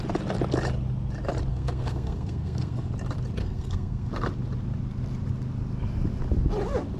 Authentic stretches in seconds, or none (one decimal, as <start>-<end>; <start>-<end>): 0.0-1.5; 2.9-3.4; 4.1-7.0